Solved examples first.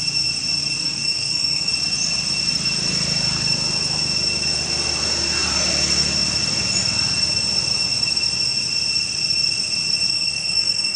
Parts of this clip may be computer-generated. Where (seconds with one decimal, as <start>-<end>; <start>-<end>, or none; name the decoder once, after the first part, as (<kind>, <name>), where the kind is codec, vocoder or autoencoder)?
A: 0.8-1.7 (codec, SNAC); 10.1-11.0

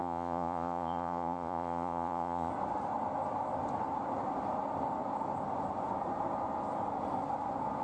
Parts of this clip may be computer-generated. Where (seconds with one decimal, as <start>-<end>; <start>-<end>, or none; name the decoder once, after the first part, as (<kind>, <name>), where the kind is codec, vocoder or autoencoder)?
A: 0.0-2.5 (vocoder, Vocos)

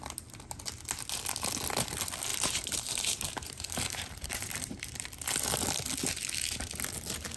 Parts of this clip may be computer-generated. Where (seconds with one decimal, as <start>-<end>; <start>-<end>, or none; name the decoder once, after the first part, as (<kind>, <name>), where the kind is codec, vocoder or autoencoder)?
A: 2.3-5.1 (vocoder, BigVGAN v2)